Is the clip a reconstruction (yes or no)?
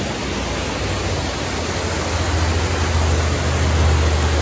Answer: no